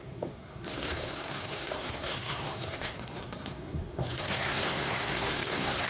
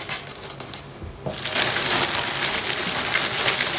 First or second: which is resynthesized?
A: first